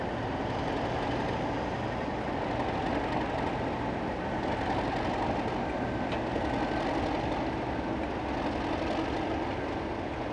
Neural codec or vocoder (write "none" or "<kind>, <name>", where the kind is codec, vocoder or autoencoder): none